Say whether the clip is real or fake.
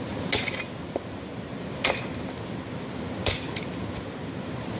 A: real